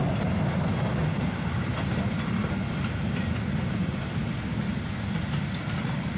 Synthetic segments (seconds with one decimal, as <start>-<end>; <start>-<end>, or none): 1.0-4.0

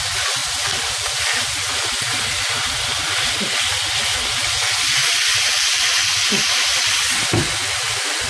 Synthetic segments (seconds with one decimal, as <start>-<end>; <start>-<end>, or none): 0.4-1.8; 5.0-5.9